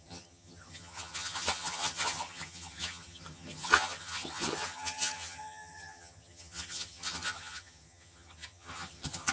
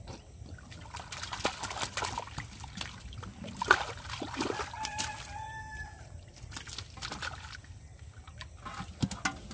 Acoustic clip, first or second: second